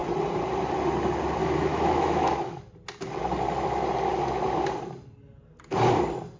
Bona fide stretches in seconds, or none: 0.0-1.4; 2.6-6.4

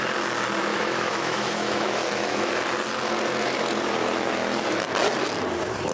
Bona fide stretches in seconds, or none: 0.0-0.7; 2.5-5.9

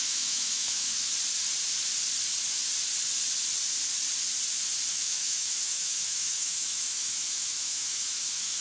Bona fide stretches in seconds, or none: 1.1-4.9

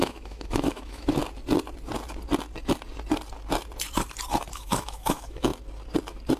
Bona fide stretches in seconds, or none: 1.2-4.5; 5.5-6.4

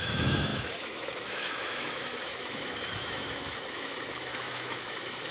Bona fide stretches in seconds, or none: none

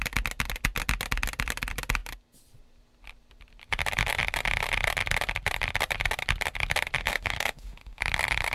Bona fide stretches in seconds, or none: 0.0-7.0; 8.0-8.5

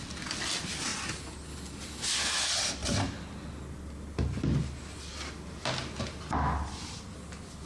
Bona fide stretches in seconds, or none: 0.0-7.7